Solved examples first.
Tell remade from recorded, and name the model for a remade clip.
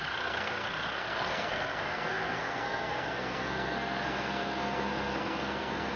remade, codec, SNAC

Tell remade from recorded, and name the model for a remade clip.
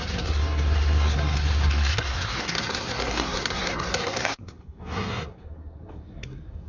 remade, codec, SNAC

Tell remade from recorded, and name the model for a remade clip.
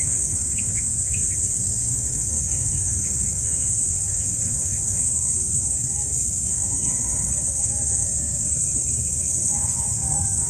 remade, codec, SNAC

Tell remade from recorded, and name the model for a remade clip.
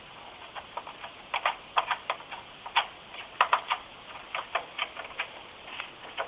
recorded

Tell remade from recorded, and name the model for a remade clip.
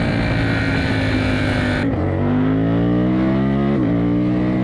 recorded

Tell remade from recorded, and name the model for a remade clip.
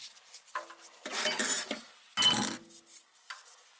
recorded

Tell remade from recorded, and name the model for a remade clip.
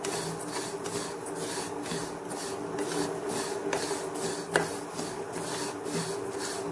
recorded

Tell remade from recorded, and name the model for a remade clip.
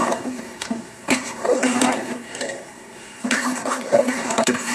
remade, codec, SNAC